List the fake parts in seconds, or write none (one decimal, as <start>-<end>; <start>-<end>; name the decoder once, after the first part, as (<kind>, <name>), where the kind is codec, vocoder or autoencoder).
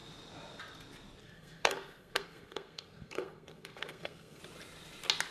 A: 1.2-4.4 (codec, SNAC)